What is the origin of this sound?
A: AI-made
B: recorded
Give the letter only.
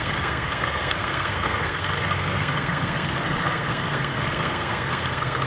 A